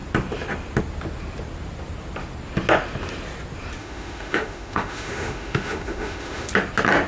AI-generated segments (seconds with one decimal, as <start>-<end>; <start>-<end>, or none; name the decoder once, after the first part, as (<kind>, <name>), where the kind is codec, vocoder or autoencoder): 3.8-6.5 (autoencoder, DAC-VAE)